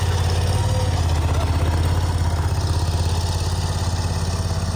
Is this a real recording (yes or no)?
yes